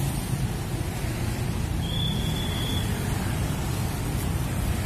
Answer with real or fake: real